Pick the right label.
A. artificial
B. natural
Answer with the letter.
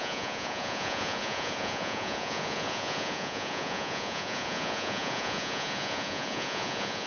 A